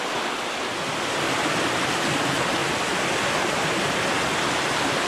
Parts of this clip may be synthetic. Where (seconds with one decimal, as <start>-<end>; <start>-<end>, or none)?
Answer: none